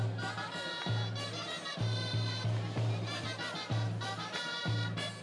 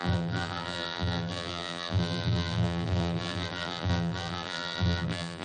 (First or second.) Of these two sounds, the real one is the first